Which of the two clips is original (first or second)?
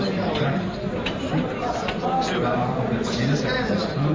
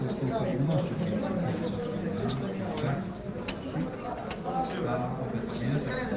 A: second